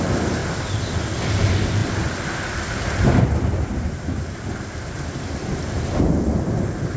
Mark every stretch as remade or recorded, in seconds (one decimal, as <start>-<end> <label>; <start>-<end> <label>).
0.0-0.4 recorded; 0.4-1.0 remade; 1.0-1.8 recorded; 1.8-6.0 remade; 6.0-7.0 recorded